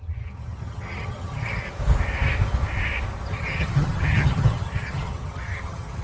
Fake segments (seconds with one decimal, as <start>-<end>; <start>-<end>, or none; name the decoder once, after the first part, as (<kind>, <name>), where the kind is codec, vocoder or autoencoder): 0.0-1.6 (vocoder, HiFi-GAN); 3.3-6.0